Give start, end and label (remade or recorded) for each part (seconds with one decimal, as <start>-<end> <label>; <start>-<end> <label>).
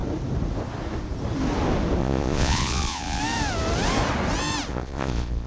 0.0-2.0 recorded; 2.0-3.2 remade; 3.2-4.7 recorded; 4.7-5.5 remade